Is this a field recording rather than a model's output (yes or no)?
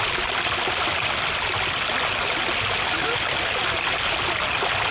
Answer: yes